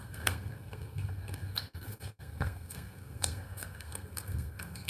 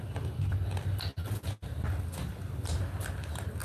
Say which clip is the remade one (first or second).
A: first